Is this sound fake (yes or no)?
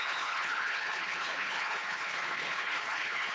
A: yes